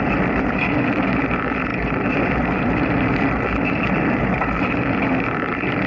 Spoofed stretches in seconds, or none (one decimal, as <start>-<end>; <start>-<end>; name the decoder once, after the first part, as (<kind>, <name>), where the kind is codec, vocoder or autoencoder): 1.7-3.3 (vocoder, BigVGAN v2)